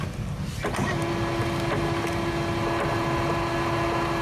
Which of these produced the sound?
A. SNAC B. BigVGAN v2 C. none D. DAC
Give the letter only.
C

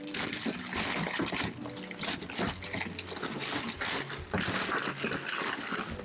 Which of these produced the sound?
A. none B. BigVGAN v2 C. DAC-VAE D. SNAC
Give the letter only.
A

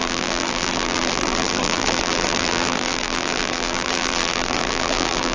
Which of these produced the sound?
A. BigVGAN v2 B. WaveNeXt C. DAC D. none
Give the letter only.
A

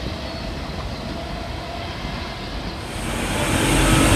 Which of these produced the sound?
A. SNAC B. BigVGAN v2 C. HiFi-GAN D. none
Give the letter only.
D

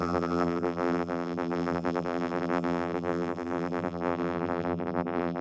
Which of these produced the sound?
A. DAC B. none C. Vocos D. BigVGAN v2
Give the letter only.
D